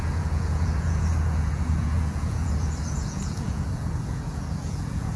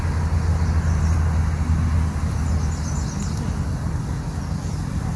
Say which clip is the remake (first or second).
first